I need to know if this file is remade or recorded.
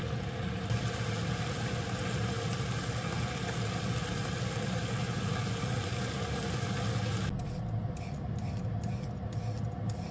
recorded